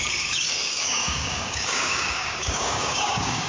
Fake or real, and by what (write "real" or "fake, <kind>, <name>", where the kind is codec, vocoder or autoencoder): fake, codec, DAC